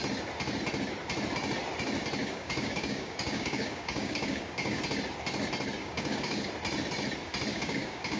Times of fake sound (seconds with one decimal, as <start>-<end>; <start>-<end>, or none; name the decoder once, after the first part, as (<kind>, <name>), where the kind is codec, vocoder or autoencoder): 2.2-4.8 (codec, DAC); 5.8-6.5; 7.5-8.2